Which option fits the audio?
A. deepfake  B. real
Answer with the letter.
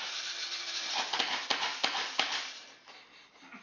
B